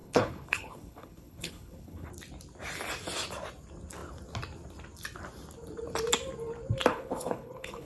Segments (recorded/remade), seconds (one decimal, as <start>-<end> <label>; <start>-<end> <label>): 0.0-2.1 remade; 2.1-6.9 recorded; 6.9-7.9 remade